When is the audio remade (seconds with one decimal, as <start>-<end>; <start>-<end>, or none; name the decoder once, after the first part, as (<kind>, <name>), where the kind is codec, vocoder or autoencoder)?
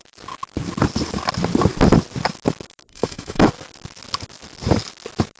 2.9-3.5 (autoencoder, DAC-VAE)